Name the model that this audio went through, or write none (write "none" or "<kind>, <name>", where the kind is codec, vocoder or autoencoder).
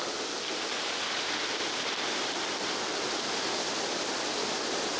none